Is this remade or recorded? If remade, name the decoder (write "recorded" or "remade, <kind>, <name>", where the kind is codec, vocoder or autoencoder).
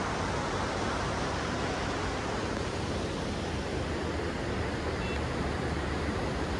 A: recorded